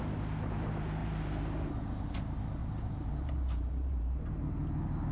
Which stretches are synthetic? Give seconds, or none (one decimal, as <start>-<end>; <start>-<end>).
1.0-2.1; 2.6-4.4